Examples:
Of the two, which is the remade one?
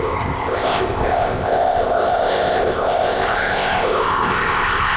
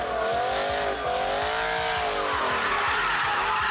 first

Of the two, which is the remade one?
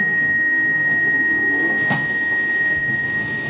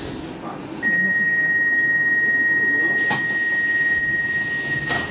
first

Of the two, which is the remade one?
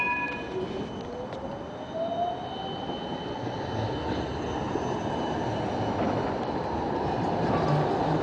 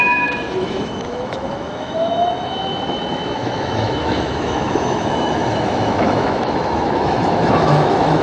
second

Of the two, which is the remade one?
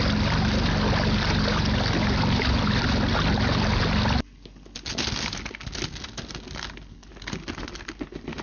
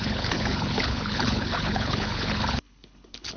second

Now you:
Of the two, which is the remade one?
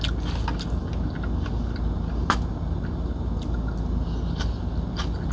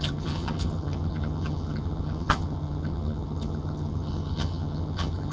second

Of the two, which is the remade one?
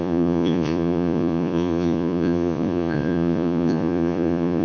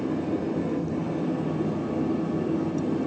first